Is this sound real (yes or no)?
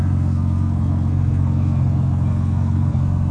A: no